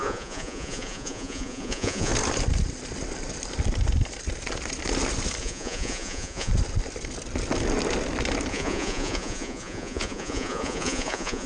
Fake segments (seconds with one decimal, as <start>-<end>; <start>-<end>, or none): 0.0-2.1; 5.4-6.5; 8.5-11.5